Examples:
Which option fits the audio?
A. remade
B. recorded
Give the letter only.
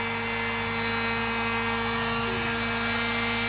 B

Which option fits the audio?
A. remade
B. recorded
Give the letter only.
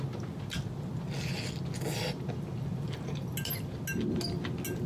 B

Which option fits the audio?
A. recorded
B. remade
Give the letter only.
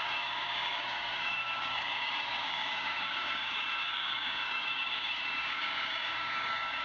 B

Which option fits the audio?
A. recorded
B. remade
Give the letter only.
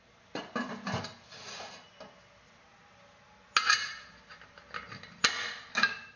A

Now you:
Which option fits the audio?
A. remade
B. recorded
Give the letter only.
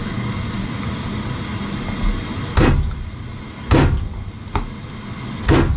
B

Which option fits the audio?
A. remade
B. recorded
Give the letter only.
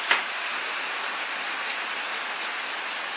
B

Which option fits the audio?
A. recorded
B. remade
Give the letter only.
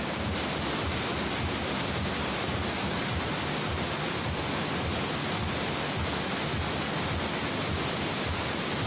A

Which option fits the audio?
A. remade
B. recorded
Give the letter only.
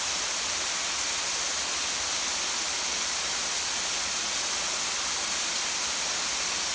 B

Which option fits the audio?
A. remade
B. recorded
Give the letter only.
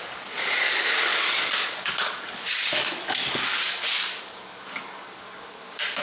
A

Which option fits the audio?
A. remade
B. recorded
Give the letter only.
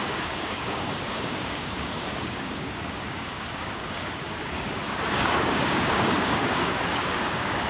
A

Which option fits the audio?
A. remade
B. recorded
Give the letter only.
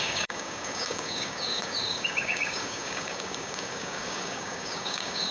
A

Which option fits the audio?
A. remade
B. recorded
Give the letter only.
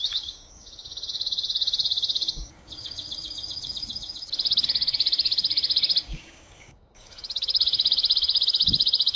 A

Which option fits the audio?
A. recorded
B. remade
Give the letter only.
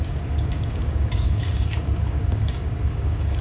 B